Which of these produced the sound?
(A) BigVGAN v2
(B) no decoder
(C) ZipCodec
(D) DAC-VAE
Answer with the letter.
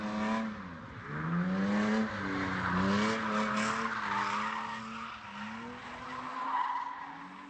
B